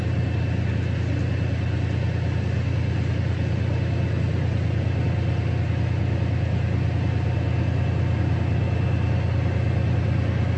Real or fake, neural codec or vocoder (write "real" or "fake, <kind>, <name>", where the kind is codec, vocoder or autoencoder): real